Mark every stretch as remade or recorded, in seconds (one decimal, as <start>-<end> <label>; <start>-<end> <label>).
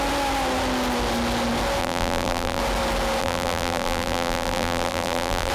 0.0-1.8 recorded; 1.8-2.6 remade; 2.6-3.2 recorded; 3.2-5.5 remade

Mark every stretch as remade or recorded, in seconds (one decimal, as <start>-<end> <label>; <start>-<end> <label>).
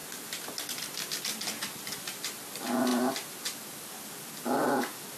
0.0-5.2 recorded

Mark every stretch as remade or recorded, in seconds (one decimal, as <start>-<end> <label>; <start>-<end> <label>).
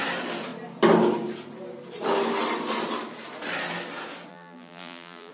0.0-4.3 recorded; 4.3-5.3 remade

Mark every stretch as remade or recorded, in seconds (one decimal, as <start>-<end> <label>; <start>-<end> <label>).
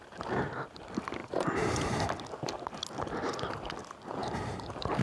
0.0-1.2 recorded; 1.2-2.0 remade; 2.0-4.2 recorded; 4.2-5.0 remade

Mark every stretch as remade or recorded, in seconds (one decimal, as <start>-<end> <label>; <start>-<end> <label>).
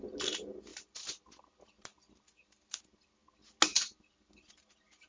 0.0-0.7 recorded; 0.7-1.4 remade; 1.4-1.9 recorded; 1.9-2.8 remade; 2.8-3.7 recorded; 3.7-4.5 remade; 4.5-5.1 recorded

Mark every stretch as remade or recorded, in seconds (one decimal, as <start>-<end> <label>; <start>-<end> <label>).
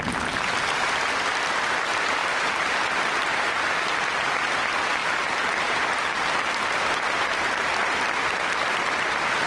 0.0-2.2 recorded; 2.2-3.6 remade; 3.6-5.0 recorded; 5.0-8.5 remade; 8.5-9.5 recorded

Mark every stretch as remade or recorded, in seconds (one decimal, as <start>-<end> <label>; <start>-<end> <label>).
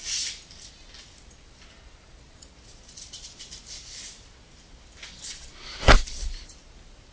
0.0-5.0 recorded; 5.0-6.3 remade; 6.3-7.1 recorded